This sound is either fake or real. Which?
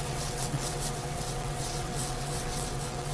fake